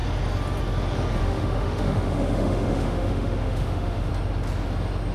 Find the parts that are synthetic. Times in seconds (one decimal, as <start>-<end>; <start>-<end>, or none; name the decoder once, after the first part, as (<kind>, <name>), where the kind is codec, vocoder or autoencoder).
1.2-4.1 (autoencoder, DAC-VAE)